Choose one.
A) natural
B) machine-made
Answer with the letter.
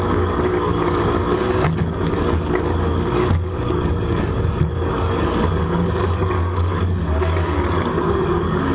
B